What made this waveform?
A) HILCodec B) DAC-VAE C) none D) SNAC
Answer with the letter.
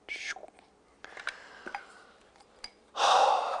C